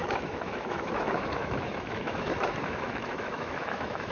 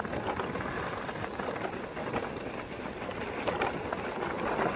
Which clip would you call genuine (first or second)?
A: second